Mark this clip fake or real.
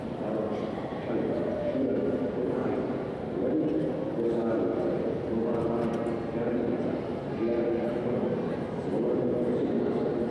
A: real